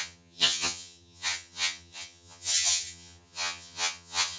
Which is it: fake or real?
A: fake